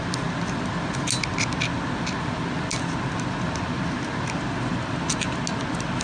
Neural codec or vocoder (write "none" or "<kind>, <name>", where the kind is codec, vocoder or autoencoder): none